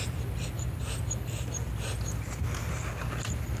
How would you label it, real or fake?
real